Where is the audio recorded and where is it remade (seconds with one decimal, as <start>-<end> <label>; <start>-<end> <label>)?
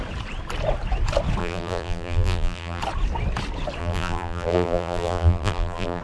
0.0-1.4 recorded; 1.4-2.8 remade; 2.8-3.8 recorded; 3.8-6.0 remade